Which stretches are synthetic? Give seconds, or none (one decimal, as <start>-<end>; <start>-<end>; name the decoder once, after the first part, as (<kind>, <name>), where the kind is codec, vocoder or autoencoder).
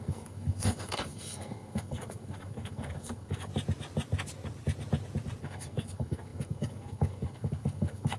0.0-3.5 (codec, SNAC); 5.4-8.2